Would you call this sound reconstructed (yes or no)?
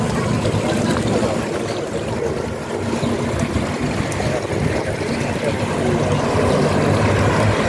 no